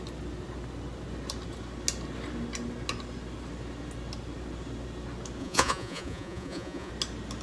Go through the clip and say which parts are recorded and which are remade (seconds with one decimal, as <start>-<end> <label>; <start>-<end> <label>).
0.0-5.4 recorded; 5.4-6.9 remade; 6.9-7.4 recorded